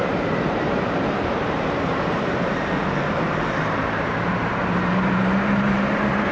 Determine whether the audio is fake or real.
fake